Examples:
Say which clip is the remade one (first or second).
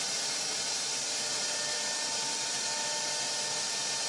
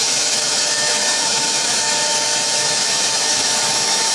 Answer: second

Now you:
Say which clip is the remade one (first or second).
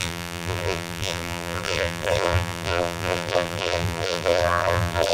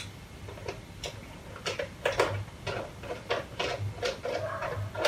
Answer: first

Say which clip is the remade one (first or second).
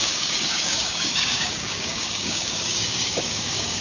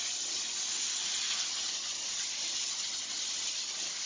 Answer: first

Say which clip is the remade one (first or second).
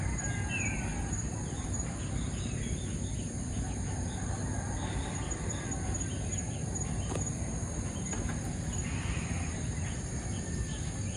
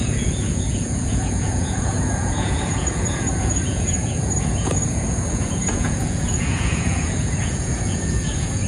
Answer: second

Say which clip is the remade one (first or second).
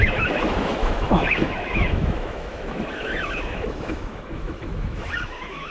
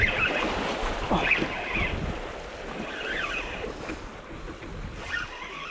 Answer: first